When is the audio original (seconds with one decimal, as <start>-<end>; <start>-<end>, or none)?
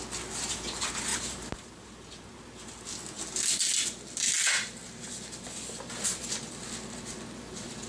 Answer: 0.0-7.9